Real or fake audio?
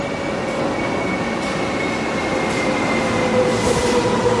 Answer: real